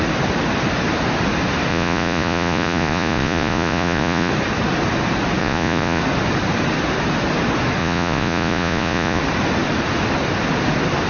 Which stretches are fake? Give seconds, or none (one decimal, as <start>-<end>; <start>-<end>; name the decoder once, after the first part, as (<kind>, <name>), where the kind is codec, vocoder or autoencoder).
1.7-4.3 (vocoder, Vocos); 5.4-6.0; 7.8-9.2